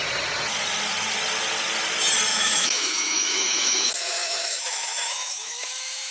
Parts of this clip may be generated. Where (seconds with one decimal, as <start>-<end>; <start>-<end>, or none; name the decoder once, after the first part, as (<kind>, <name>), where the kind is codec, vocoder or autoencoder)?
2.3-6.1 (autoencoder, DAC-VAE)